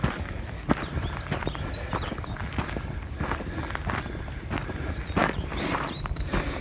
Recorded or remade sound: recorded